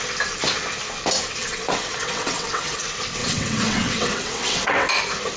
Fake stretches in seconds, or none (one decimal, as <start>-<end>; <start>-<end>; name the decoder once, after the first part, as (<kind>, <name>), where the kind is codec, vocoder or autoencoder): 1.4-2.8 (vocoder, WaveNeXt); 3.2-4.9

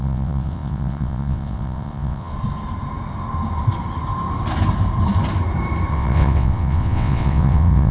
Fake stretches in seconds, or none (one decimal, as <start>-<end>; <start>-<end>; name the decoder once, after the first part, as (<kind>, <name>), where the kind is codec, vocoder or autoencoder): 0.0-2.3 (vocoder, WaveNeXt); 5.9-7.9

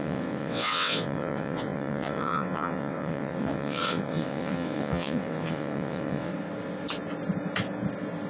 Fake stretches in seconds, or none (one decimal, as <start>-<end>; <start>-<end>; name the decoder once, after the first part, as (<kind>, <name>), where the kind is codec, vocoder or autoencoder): 0.0-6.3 (vocoder, WaveNeXt)

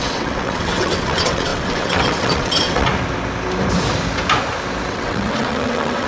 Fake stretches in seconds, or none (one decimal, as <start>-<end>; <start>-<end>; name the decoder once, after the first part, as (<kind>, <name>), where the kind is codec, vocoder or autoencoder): 0.0-2.9 (vocoder, WaveNeXt); 4.9-6.1

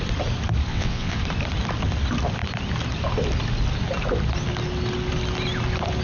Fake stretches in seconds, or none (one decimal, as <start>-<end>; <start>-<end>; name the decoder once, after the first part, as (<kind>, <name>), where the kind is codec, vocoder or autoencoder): 0.7-1.2 (vocoder, WaveNeXt)

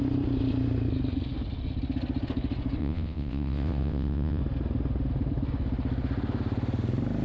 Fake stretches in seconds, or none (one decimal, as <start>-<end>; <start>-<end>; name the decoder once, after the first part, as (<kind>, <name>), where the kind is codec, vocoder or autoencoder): 2.8-4.4 (vocoder, WaveNeXt)